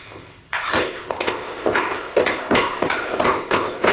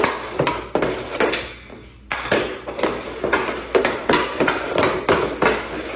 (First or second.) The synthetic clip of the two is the first